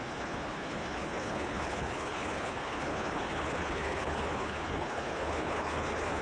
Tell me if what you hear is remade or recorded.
remade